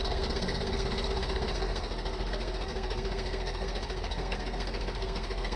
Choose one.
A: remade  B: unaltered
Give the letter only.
A